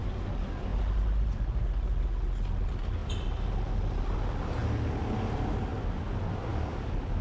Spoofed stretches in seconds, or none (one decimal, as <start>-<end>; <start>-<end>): none